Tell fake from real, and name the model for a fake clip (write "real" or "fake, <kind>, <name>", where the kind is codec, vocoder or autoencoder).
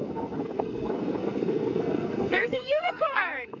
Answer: fake, codec, SNAC